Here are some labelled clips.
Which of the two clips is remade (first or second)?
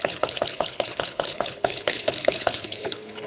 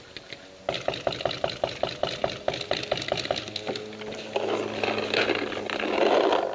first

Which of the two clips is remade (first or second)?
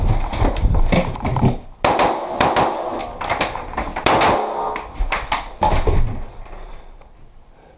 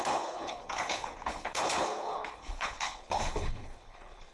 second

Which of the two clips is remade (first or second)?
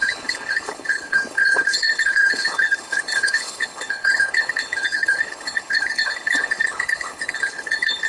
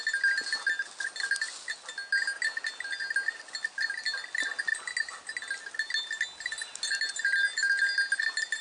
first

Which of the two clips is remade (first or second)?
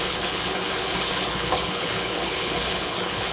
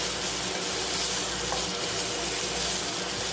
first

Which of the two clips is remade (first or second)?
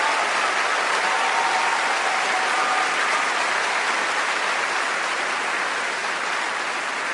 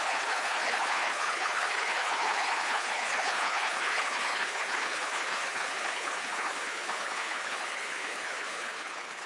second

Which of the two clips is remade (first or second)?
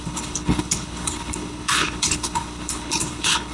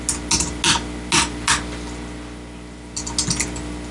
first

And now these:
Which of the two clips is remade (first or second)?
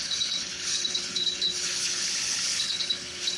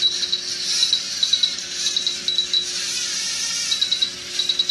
first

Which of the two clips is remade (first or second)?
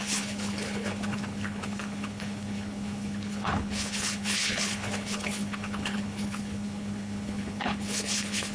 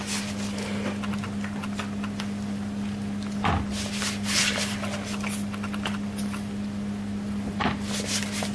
first